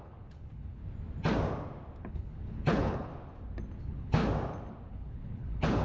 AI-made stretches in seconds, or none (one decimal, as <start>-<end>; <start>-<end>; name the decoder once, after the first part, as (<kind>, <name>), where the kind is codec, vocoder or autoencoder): 0.0-0.8 (codec, HILCodec); 2.0-3.1; 3.8-4.2; 4.9-5.8

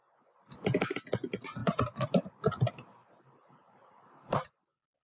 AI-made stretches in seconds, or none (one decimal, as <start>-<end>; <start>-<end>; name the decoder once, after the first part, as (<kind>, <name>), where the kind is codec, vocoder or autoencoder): 1.6-4.6 (vocoder, BigVGAN v2)

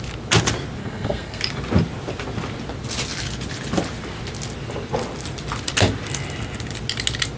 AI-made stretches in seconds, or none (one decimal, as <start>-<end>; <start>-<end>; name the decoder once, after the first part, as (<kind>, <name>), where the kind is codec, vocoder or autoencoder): 0.8-1.4 (codec, SNAC)